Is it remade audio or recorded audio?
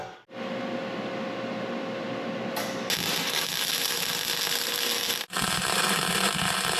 recorded